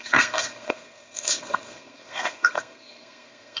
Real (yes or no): no